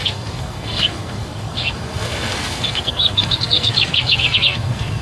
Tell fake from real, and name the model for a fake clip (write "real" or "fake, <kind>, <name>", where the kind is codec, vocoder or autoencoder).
fake, codec, SNAC